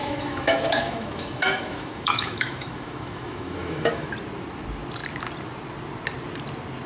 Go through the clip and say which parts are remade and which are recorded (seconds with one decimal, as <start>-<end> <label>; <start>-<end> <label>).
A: 0.0-4.1 remade; 4.1-6.9 recorded